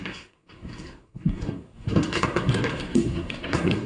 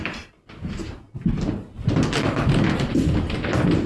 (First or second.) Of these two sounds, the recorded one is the second